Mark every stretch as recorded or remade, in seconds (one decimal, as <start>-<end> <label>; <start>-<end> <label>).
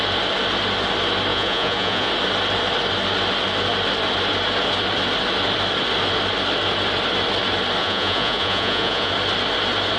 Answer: 0.0-1.3 recorded; 1.3-2.1 remade; 2.1-7.8 recorded; 7.8-9.1 remade; 9.1-10.0 recorded